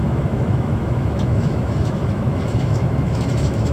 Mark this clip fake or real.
fake